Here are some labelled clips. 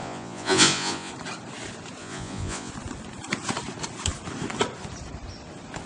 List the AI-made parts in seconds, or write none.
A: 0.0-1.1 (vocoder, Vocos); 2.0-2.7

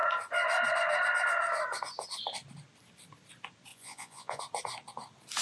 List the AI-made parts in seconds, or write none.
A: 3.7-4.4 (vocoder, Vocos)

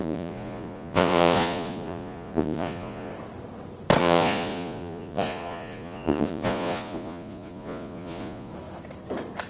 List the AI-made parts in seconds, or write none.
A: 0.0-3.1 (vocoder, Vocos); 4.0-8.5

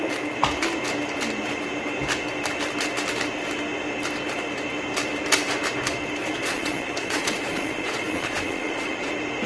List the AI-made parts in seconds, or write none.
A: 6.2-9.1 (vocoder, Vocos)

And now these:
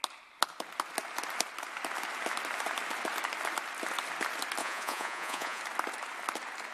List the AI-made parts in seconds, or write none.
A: 4.6-5.6 (vocoder, Vocos)

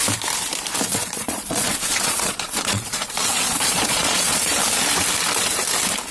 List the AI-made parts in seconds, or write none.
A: 0.9-4.6 (vocoder, Vocos)

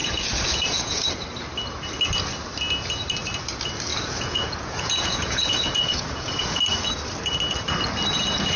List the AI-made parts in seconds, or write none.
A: 0.0-1.1 (vocoder, Vocos); 3.9-6.6